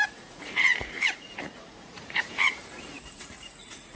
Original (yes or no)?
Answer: no